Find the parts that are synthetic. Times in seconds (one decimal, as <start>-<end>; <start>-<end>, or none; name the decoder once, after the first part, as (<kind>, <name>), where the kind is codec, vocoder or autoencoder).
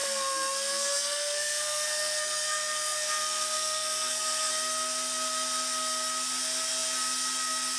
0.0-4.5 (codec, SNAC)